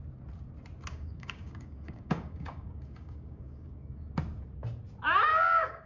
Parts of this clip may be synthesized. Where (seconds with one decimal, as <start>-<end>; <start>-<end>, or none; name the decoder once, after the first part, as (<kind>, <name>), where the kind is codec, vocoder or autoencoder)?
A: 0.9-4.1 (codec, DAC); 5.3-5.9